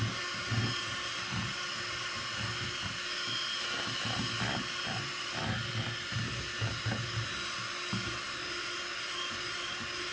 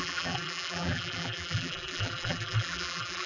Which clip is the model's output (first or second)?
second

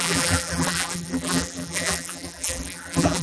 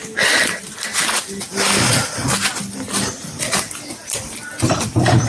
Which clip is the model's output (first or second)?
first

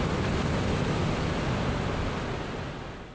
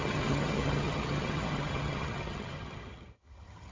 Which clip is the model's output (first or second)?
second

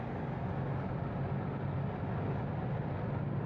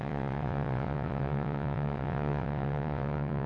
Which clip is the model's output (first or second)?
second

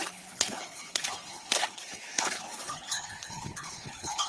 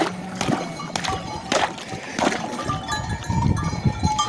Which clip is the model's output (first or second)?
first